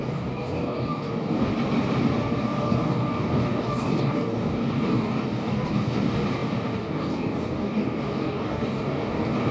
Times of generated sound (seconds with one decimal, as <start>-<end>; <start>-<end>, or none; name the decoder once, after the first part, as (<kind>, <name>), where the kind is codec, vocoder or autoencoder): 0.0-1.5 (codec, DAC); 2.4-9.5